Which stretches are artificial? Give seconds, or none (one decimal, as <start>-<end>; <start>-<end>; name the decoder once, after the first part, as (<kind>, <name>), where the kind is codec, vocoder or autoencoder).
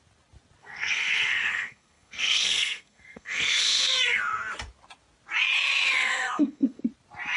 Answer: 0.6-4.2 (codec, SNAC); 6.0-6.8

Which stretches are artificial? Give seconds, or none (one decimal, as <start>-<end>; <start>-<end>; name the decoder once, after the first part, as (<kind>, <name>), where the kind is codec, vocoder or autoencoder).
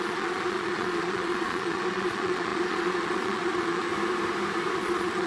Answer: 0.0-3.9 (vocoder, Vocos); 4.8-5.3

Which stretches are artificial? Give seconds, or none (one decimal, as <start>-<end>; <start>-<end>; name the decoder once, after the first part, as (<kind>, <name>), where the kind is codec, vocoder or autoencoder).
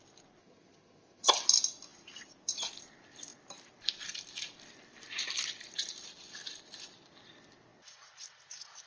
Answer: 0.4-1.3 (vocoder, HiFi-GAN)